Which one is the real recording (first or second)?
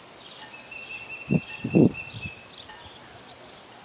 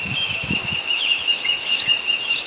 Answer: first